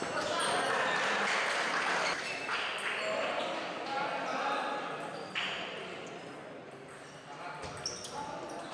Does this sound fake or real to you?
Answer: real